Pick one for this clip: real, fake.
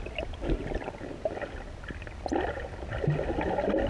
real